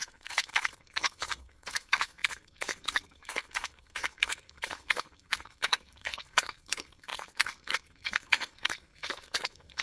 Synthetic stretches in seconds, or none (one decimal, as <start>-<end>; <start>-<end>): 0.0-9.8